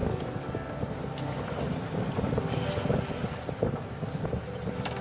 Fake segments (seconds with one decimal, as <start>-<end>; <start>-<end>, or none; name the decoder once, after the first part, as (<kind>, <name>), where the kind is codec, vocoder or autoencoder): none